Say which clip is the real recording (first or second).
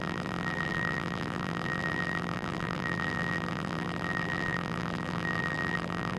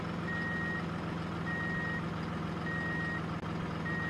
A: second